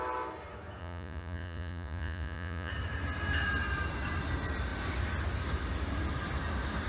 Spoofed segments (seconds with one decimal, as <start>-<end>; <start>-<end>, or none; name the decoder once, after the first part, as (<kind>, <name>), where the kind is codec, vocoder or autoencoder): 0.8-2.7 (vocoder, Vocos)